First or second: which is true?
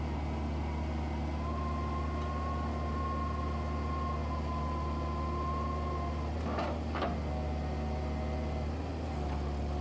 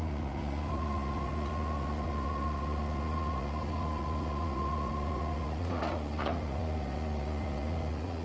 first